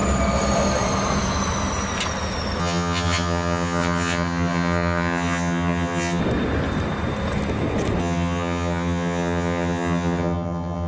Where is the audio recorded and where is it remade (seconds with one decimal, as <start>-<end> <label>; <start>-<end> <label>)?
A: 0.0-2.6 recorded; 2.6-6.2 remade; 6.2-8.0 recorded; 8.0-10.9 remade